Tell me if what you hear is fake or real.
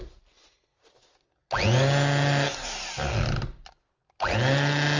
real